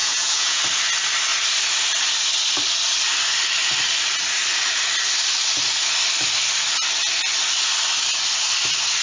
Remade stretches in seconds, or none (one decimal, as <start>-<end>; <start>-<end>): 0.0-0.6